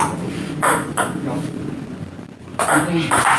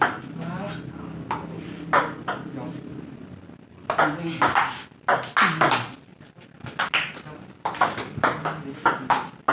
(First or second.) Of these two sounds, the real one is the second